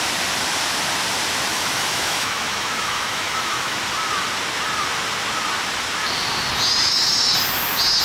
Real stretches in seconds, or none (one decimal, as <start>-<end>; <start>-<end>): 0.0-1.5; 3.8-8.0

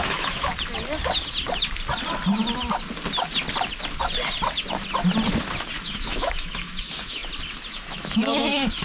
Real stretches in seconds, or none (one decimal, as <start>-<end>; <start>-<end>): 0.5-5.8; 7.2-7.7

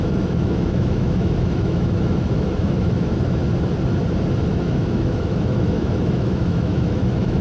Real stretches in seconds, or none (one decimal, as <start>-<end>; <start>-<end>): 3.4-4.5

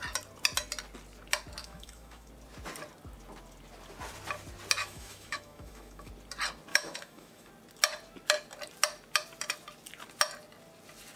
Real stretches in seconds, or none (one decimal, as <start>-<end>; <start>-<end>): 0.0-1.6; 2.3-4.8; 6.1-6.7; 7.5-11.2

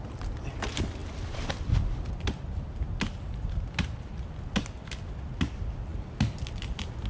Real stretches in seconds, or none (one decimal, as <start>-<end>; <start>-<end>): 0.0-7.1

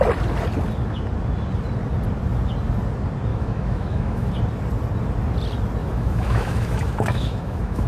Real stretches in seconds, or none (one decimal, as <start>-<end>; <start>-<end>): 0.0-3.3; 4.3-5.8

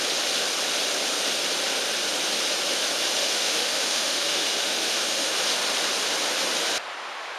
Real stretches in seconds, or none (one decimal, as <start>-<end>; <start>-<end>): 0.0-3.2; 5.3-7.4